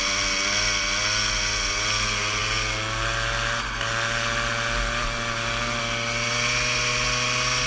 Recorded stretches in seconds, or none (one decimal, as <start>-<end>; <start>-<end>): 0.0-7.7